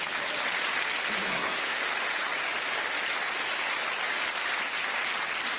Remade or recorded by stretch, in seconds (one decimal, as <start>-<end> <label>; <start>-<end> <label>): 0.0-1.3 recorded; 1.3-1.8 remade; 1.8-5.6 recorded